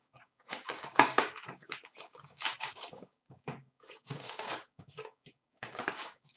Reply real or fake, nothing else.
fake